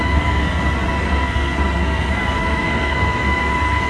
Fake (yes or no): yes